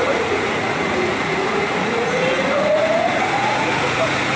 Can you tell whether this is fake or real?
fake